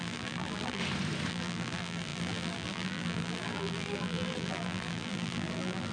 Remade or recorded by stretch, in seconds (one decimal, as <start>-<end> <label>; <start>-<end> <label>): 0.0-0.8 remade; 0.8-1.3 recorded; 1.3-5.9 remade